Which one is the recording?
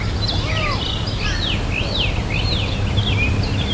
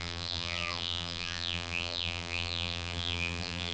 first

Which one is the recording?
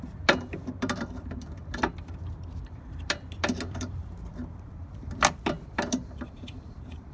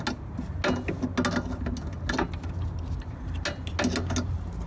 second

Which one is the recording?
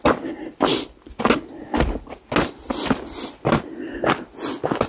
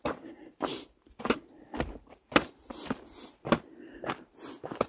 first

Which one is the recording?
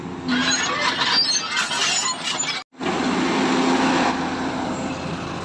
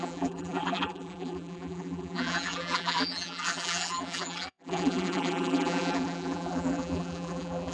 first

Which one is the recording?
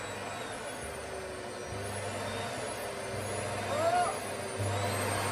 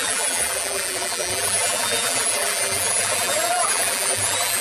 first